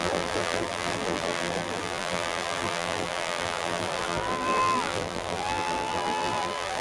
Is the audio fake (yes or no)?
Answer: yes